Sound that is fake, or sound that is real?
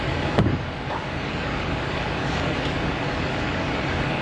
fake